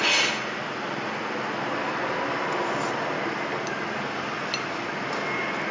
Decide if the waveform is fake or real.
real